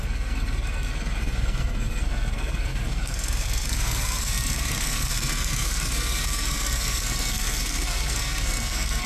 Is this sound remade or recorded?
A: remade